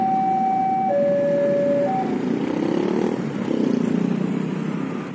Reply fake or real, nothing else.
real